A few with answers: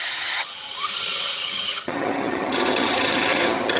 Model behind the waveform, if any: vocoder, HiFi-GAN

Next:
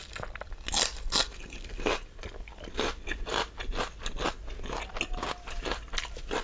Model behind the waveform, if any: none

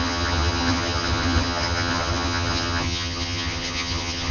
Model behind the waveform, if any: vocoder, HiFi-GAN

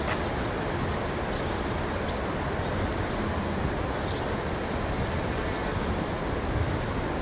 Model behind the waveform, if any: none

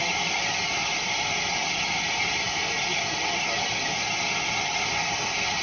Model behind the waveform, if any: none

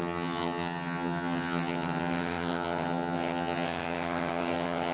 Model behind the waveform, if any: vocoder, HiFi-GAN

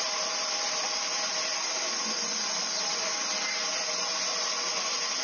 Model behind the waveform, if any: none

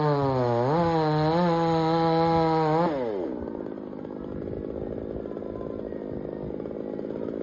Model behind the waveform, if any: none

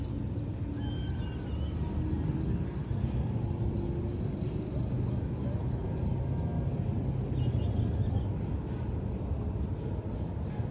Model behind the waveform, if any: none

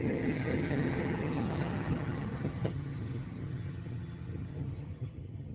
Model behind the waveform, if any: vocoder, HiFi-GAN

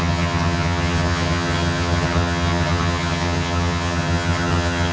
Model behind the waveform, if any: vocoder, HiFi-GAN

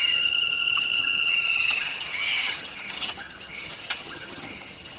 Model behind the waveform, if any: vocoder, HiFi-GAN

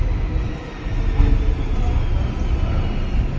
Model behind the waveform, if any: none